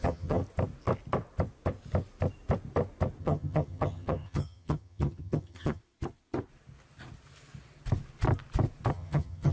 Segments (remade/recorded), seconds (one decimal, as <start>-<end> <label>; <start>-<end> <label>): 0.0-0.4 remade; 0.4-3.2 recorded; 3.2-5.8 remade; 5.8-8.9 recorded; 8.9-9.5 remade